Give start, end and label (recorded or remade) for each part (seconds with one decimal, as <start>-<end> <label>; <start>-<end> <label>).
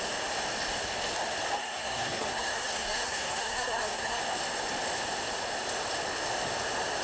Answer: 0.0-1.6 recorded; 1.6-4.2 remade; 4.2-7.0 recorded